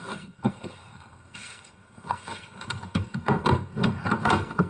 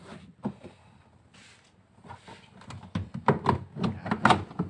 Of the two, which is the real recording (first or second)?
second